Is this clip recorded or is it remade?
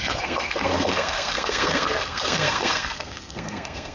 remade